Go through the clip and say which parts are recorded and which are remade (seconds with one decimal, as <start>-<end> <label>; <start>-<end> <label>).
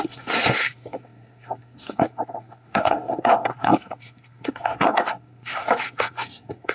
0.0-6.7 remade